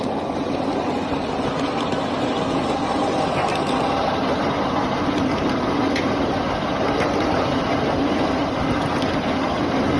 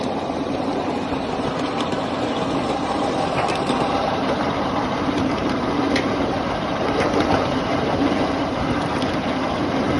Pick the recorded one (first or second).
first